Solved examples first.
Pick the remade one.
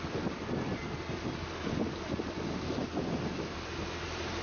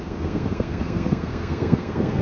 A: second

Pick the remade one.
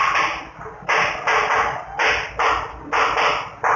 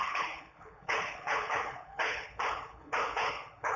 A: second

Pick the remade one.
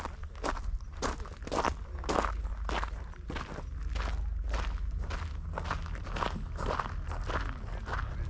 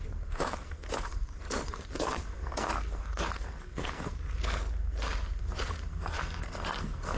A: second